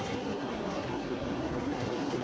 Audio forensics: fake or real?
fake